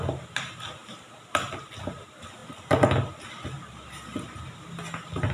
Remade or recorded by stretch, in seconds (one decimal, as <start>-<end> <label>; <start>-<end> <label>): 0.0-5.3 recorded